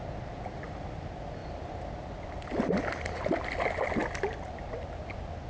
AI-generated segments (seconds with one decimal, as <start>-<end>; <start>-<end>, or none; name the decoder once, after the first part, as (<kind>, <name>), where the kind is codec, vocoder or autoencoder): none